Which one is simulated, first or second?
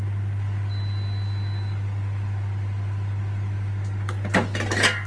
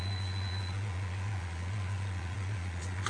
second